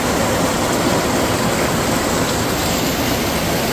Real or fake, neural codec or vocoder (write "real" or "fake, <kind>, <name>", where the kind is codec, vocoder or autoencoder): real